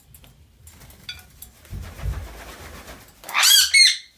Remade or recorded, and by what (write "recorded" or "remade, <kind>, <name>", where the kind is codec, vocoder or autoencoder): recorded